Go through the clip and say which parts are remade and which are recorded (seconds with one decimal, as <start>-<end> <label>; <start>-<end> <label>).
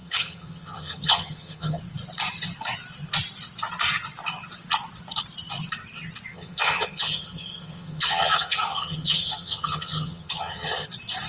0.0-1.8 remade; 1.8-6.3 recorded; 6.3-10.9 remade; 10.9-11.3 recorded